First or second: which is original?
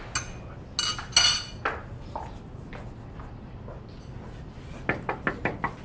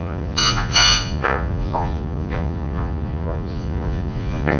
first